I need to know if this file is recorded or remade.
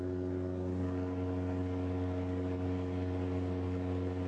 remade